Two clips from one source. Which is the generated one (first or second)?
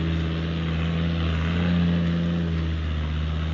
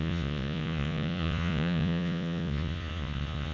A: second